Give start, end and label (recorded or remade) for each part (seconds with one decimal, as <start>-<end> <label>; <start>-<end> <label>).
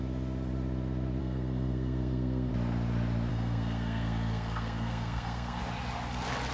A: 0.0-1.2 recorded; 1.2-2.5 remade; 2.5-3.3 recorded; 3.3-5.6 remade; 5.6-6.5 recorded